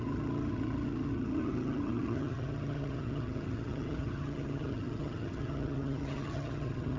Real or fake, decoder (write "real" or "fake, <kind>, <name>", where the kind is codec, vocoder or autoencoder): fake, vocoder, HiFi-GAN